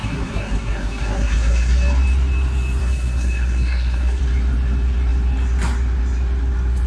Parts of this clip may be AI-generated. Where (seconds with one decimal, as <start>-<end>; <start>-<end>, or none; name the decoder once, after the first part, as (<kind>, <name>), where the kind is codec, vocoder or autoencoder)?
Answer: 0.0-1.7 (codec, SNAC); 2.8-4.2